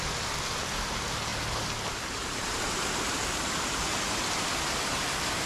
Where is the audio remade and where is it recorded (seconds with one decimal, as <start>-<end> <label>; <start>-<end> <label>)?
0.0-5.5 recorded